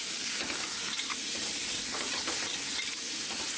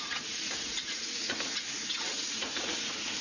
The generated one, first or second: second